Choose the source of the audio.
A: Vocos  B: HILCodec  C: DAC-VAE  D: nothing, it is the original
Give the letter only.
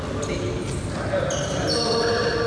D